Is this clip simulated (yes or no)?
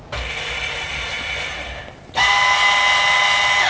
no